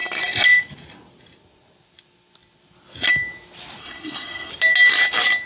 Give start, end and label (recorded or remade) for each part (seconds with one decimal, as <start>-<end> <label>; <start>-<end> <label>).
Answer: 0.0-3.8 recorded; 3.8-4.5 remade; 4.5-5.5 recorded